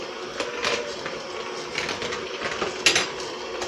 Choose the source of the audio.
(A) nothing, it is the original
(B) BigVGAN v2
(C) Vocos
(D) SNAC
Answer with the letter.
A